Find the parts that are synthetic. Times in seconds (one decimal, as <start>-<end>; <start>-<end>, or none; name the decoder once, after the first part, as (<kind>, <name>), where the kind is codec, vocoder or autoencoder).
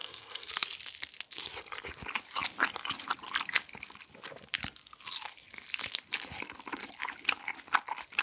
0.0-0.5 (codec, SNAC)